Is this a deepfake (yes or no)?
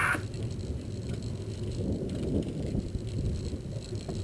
no